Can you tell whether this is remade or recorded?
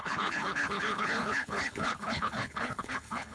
remade